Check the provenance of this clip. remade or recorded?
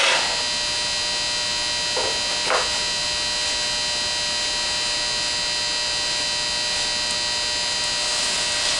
recorded